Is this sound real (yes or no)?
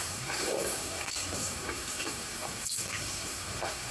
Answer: no